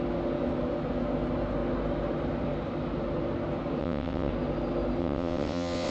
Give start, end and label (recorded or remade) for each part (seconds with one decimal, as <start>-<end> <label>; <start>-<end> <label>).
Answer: 0.0-3.8 recorded; 3.8-4.3 remade; 4.3-5.0 recorded; 5.0-5.9 remade